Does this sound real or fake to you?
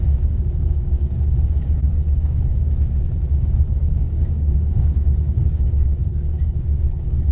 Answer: fake